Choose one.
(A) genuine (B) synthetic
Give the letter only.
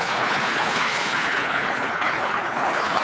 B